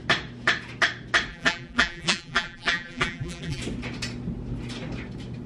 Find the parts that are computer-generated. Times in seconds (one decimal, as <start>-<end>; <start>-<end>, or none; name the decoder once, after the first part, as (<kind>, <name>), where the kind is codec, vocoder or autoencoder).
1.3-3.6 (vocoder, BigVGAN v2)